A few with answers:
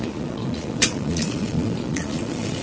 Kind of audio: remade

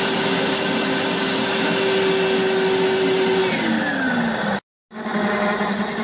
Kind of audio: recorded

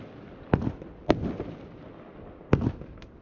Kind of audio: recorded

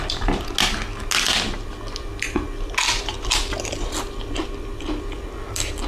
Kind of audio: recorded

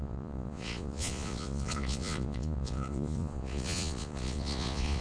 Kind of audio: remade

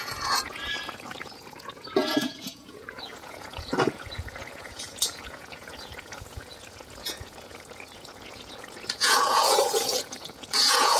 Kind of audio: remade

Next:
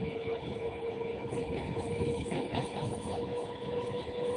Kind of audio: remade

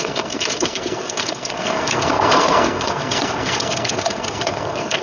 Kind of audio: remade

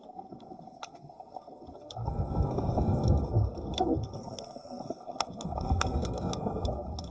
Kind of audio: remade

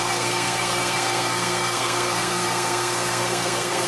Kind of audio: remade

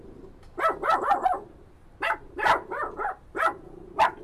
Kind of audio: recorded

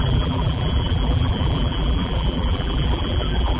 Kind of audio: remade